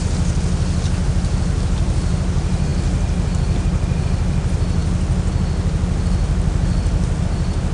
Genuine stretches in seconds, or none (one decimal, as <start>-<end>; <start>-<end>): 0.0-7.7